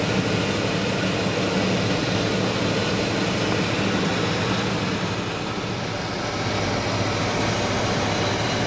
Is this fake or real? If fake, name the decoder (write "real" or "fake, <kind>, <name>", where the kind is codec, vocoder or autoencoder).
real